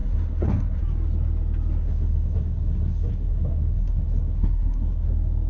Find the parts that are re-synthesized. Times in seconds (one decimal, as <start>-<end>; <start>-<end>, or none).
0.0-0.8; 1.8-5.1